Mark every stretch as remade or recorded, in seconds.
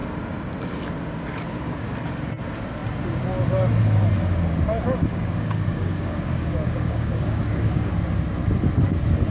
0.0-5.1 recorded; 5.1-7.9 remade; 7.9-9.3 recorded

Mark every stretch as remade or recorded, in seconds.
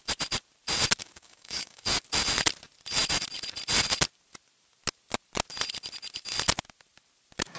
0.0-1.0 recorded; 1.0-2.0 remade; 2.0-7.6 recorded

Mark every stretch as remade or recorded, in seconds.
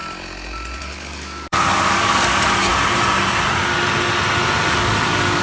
0.0-0.8 recorded; 0.8-2.7 remade; 2.7-4.7 recorded; 4.7-5.4 remade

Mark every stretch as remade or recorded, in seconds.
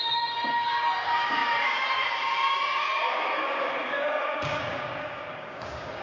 0.0-6.0 remade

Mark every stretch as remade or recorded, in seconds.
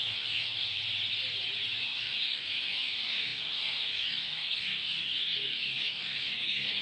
0.0-0.8 remade; 0.8-1.8 recorded; 1.8-6.8 remade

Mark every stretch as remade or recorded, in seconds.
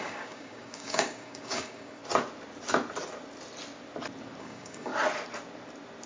0.0-2.0 remade; 2.0-4.4 recorded; 4.4-4.9 remade; 4.9-6.1 recorded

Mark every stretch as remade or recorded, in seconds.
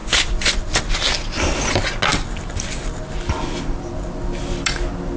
0.0-5.2 recorded